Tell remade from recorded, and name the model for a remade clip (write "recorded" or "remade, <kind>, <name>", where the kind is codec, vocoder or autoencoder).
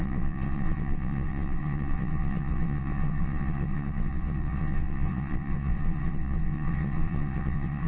remade, vocoder, WaveNeXt